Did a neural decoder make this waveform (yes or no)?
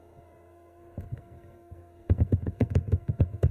yes